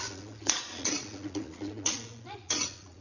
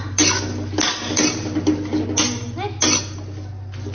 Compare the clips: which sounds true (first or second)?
second